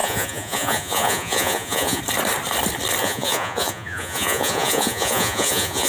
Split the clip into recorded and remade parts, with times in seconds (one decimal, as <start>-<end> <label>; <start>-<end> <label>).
0.0-2.0 remade; 2.0-3.0 recorded; 3.0-5.9 remade